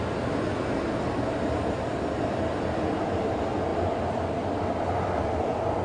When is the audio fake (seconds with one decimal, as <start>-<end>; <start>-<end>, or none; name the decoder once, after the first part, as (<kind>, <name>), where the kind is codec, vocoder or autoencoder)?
none